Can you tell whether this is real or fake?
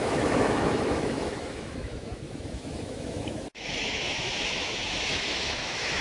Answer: fake